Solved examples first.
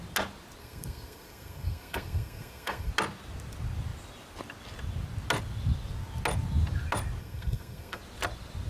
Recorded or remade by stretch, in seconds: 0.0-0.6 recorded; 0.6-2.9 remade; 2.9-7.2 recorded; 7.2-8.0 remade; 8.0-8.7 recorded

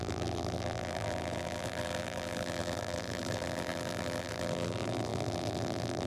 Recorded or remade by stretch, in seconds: 0.0-6.1 remade

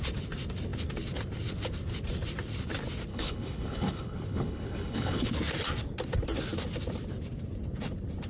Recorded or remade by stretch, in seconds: 0.0-3.1 recorded; 3.1-5.3 remade; 5.3-8.3 recorded

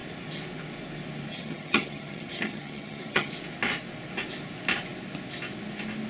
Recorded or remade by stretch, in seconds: 0.0-1.3 recorded; 1.3-3.3 remade; 3.3-6.1 recorded

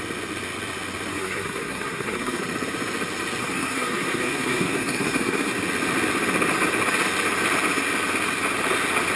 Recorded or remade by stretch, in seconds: 0.0-1.1 recorded; 1.1-2.4 remade; 2.4-3.4 recorded; 3.4-5.5 remade; 5.5-9.2 recorded